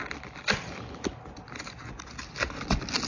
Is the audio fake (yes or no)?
no